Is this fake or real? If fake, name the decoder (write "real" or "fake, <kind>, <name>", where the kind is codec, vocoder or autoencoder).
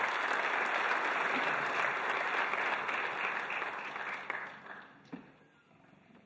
real